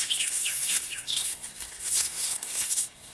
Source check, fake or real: fake